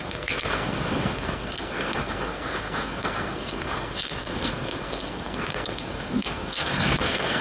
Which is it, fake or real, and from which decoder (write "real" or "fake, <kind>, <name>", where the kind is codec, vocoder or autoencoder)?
fake, codec, SNAC